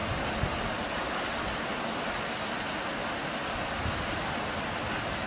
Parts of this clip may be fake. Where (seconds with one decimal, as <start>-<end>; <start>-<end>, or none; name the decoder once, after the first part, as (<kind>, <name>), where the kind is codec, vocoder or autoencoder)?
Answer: none